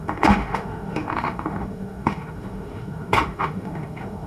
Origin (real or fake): fake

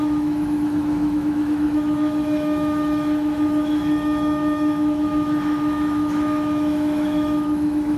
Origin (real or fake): fake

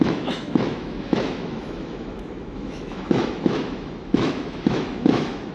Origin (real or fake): fake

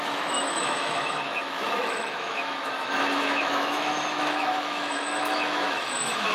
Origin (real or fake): fake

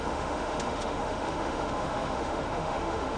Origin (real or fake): fake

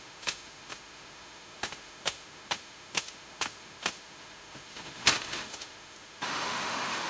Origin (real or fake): fake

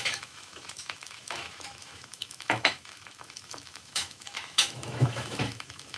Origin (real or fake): fake